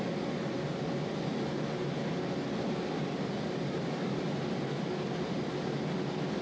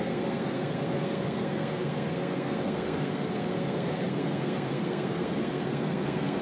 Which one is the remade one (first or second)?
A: second